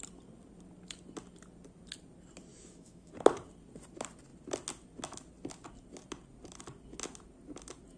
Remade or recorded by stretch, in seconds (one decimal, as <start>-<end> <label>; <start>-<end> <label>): 0.0-2.5 recorded; 2.5-3.1 remade; 3.1-8.0 recorded